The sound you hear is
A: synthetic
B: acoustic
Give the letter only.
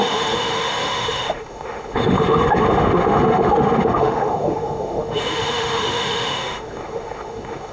A